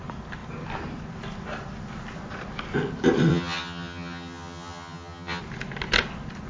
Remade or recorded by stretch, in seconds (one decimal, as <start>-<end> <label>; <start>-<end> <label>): 0.0-3.3 recorded; 3.3-5.4 remade; 5.4-6.5 recorded